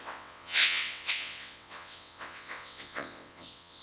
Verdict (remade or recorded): remade